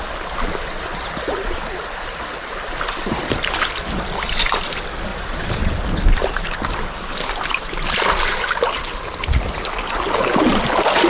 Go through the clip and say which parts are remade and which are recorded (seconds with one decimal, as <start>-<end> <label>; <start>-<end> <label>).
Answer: 0.0-5.1 recorded; 5.1-5.7 remade; 5.7-11.1 recorded